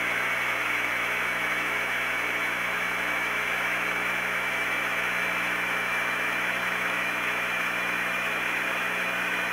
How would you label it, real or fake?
fake